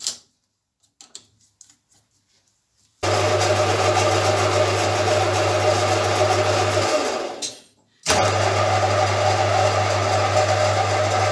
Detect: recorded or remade recorded